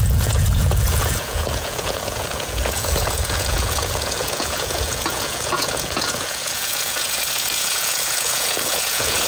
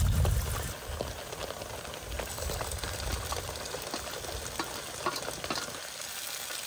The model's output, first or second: first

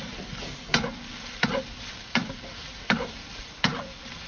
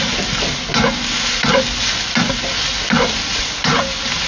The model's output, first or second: first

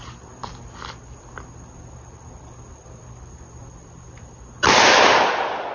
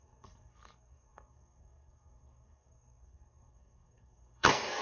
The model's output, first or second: second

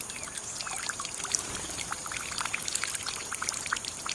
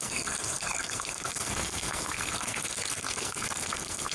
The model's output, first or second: second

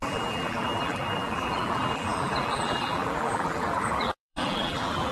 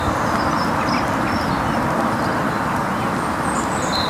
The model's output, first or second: first